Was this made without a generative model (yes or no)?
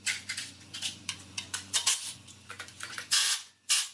no